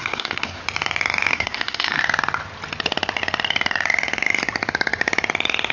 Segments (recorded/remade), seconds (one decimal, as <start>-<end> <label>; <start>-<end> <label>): 0.0-0.6 remade; 0.6-1.3 recorded; 1.3-2.0 remade; 2.0-5.7 recorded